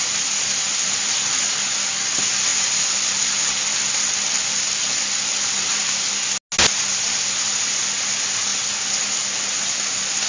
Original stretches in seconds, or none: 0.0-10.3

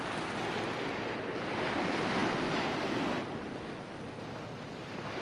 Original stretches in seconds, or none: 0.0-5.2

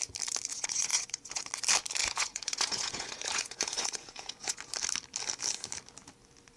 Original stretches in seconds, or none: 0.0-0.5; 1.5-2.0; 4.6-6.6

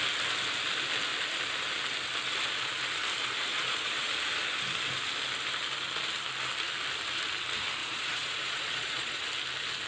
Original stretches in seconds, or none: 0.0-3.5; 4.1-7.8; 9.2-9.9